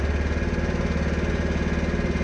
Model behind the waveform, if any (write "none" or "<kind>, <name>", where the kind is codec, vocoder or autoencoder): none